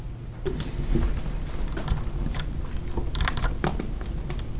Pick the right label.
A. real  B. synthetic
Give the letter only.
A